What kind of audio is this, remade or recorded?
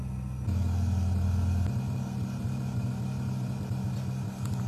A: recorded